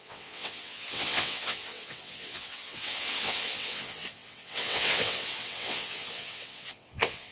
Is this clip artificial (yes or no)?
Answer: yes